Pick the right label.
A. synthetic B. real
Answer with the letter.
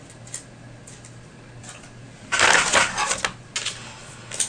B